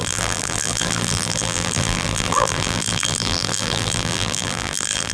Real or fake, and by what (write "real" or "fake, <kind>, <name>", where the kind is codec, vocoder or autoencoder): fake, vocoder, BigVGAN v2